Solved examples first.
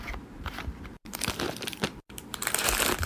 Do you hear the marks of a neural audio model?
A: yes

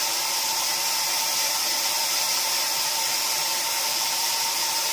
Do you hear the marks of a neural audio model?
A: yes